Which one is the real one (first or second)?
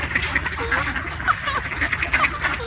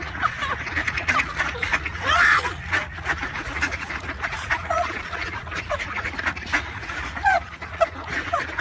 first